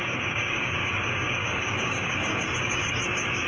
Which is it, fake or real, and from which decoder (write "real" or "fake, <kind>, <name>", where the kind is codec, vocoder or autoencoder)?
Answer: fake, codec, DAC